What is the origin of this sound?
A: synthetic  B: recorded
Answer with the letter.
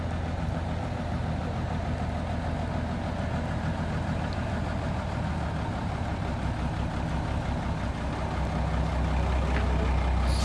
B